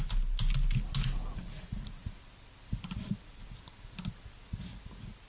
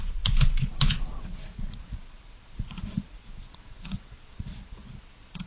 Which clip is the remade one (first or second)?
second